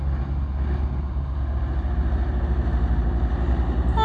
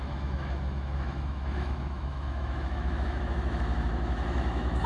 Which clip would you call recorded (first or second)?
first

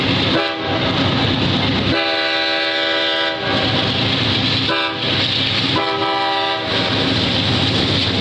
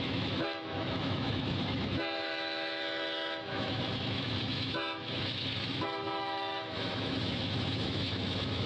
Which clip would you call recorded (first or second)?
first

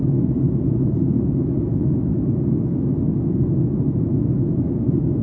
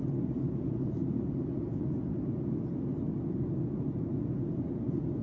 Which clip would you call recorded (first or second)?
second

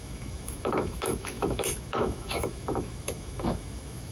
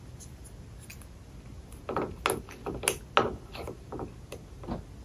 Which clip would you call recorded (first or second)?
second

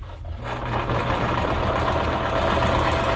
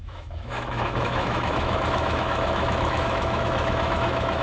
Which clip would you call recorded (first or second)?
first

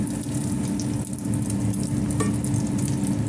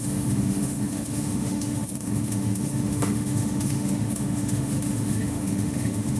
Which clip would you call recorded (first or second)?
first